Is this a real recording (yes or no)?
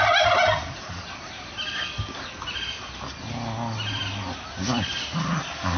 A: yes